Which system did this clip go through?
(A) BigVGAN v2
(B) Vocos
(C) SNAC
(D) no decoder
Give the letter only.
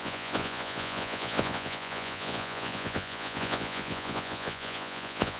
B